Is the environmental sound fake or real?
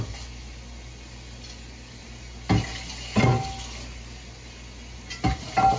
real